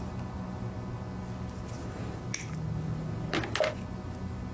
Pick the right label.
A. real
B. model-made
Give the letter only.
A